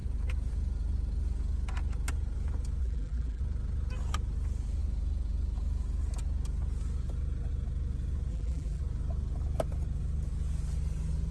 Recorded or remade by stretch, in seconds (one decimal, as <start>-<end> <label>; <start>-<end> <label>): 0.0-2.8 recorded; 2.8-3.4 remade; 3.4-8.3 recorded; 8.3-8.8 remade; 8.8-11.3 recorded